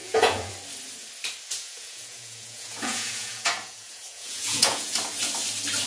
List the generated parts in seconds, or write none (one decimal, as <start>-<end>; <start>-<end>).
0.0-0.5; 1.5-5.0